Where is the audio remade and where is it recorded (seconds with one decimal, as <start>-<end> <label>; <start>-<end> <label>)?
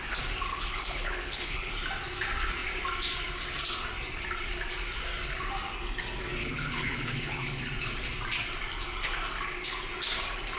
0.0-0.5 recorded; 0.5-1.7 remade; 1.7-6.4 recorded; 6.4-7.6 remade; 7.6-10.6 recorded